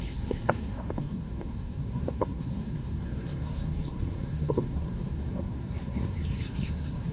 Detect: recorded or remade remade